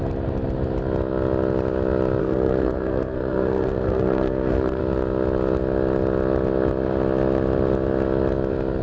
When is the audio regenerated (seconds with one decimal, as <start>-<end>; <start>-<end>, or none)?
2.2-4.8